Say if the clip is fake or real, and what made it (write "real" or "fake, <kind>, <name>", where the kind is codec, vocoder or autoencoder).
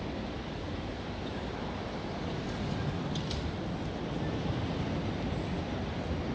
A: real